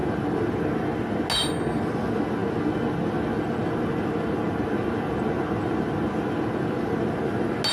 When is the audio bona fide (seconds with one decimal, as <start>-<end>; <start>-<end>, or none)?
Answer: 0.0-7.7